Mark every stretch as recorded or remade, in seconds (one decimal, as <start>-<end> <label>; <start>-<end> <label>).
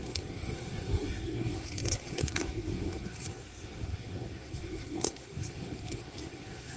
0.0-6.8 remade